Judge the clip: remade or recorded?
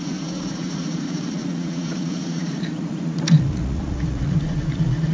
remade